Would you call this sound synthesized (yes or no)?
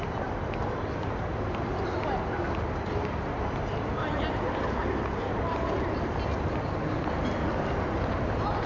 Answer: no